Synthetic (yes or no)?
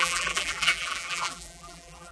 yes